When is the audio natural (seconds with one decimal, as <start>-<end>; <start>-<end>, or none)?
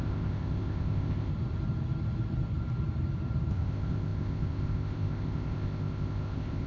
1.3-3.5